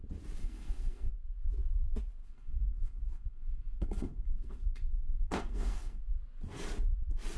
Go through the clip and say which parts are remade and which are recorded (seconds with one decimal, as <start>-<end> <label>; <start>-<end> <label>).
0.0-0.4 recorded; 0.4-1.1 remade; 1.1-2.2 recorded; 2.2-6.0 remade; 6.0-7.4 recorded